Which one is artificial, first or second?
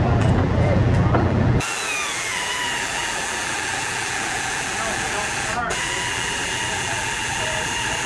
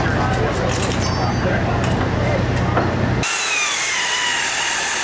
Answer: first